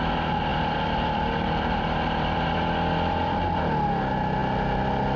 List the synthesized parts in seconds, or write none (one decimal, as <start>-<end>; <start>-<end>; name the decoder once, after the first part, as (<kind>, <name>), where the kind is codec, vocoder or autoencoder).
0.5-3.6 (vocoder, BigVGAN v2)